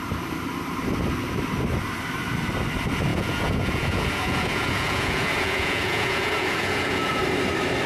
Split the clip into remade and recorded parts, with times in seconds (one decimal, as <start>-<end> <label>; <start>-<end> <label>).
0.0-3.1 recorded; 3.1-7.2 remade; 7.2-7.9 recorded